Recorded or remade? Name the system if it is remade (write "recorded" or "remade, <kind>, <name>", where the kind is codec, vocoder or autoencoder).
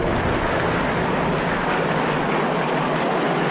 recorded